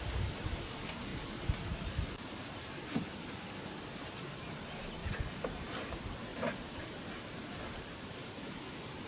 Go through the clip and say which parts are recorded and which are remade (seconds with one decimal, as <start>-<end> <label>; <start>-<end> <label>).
0.0-5.0 remade; 5.0-5.5 recorded; 5.5-6.3 remade; 6.3-6.8 recorded; 6.8-9.1 remade